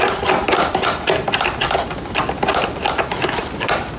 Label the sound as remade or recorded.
recorded